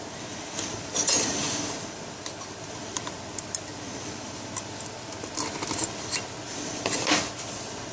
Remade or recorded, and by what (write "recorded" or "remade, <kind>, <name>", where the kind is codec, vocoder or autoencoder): recorded